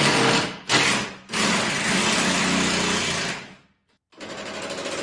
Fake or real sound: real